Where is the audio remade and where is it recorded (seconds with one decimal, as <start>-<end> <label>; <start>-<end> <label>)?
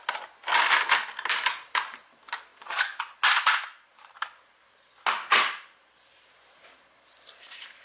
0.0-2.5 recorded; 2.5-3.2 remade; 3.2-7.8 recorded